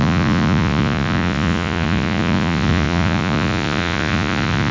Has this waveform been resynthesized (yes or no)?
yes